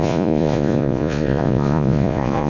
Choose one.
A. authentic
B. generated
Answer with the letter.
B